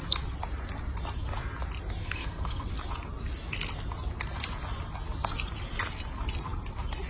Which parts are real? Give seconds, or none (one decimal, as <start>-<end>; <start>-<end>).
0.0-2.0; 2.7-7.1